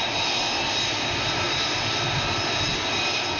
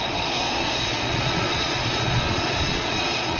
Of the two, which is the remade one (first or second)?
second